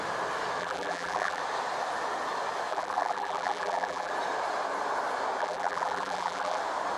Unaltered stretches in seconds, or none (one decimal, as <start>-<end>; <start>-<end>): 0.0-0.6; 1.4-2.7; 4.1-5.4; 6.6-7.0